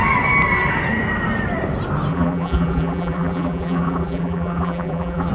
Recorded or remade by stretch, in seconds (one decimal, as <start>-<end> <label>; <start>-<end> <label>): 0.0-2.1 recorded; 2.1-5.3 remade